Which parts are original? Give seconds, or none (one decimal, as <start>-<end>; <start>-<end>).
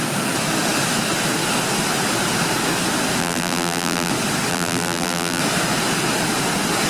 0.0-3.2; 4.1-4.5; 5.4-6.9